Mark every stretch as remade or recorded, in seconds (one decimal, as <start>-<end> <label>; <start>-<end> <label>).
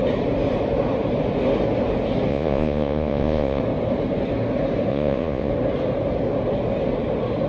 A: 0.0-2.3 recorded; 2.3-3.6 remade; 3.6-4.9 recorded; 4.9-5.5 remade; 5.5-7.5 recorded